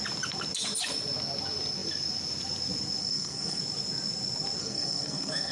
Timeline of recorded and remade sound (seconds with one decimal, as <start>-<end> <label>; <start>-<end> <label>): 0.0-3.0 recorded; 3.0-3.6 remade; 3.6-4.6 recorded; 4.6-5.5 remade